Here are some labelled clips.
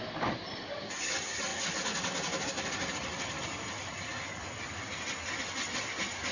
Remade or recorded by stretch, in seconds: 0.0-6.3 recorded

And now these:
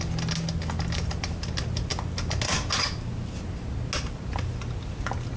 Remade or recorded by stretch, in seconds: 0.0-5.4 recorded

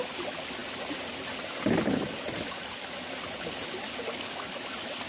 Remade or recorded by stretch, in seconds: 0.0-5.1 recorded